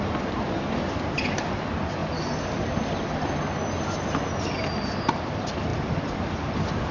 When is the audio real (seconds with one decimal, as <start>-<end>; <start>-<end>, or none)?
0.0-6.9